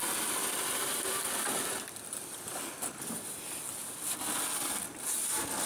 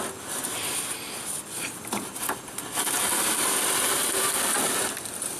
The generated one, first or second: first